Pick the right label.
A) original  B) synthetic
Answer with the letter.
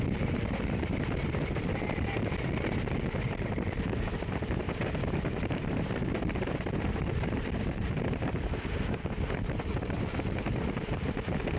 B